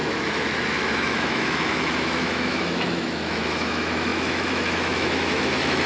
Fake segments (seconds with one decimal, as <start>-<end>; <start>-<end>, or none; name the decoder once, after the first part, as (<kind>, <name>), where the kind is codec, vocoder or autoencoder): 0.0-5.9 (autoencoder, DAC-VAE)